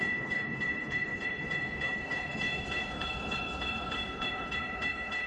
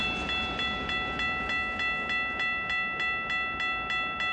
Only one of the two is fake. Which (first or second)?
first